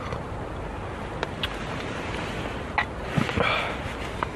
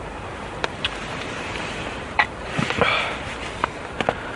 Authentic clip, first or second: first